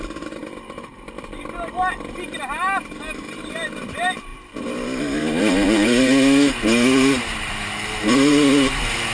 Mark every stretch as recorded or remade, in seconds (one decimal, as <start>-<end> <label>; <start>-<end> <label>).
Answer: 0.0-9.1 remade